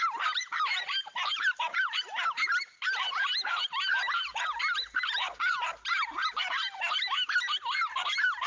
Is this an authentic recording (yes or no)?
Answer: yes